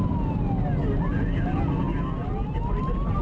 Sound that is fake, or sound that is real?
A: real